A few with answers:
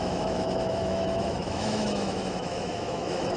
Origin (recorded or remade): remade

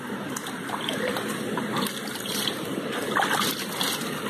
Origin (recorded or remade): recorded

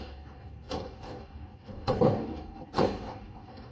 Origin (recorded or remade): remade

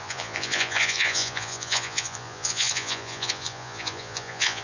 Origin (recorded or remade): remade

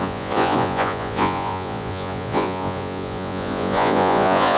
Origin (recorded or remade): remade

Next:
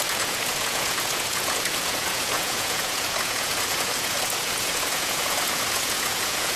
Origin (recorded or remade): remade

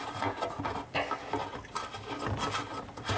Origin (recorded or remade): recorded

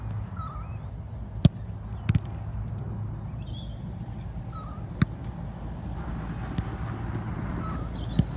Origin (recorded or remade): recorded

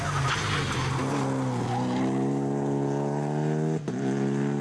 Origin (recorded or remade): recorded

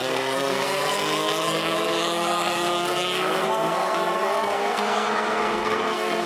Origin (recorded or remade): remade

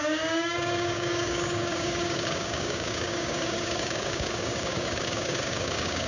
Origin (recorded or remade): remade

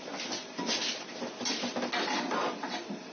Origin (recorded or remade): recorded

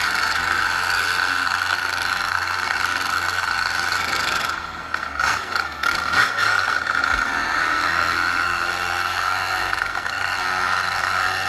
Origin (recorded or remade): remade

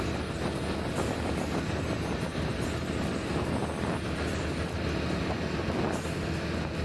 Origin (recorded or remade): recorded